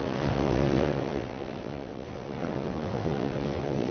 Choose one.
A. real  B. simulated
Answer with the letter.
B